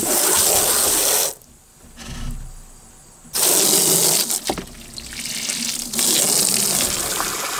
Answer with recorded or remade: recorded